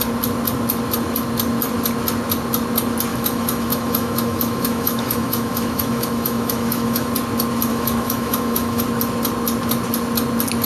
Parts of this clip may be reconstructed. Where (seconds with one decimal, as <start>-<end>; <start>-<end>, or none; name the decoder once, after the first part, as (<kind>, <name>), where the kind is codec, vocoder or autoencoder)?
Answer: 3.1-7.1 (autoencoder, DAC-VAE); 7.7-8.8